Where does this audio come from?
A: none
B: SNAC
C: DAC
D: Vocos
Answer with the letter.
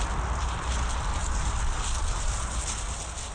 A